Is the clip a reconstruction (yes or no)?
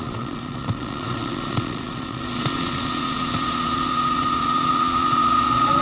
yes